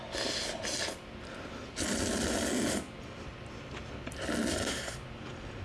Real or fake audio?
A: real